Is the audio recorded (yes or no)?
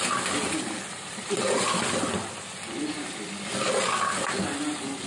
yes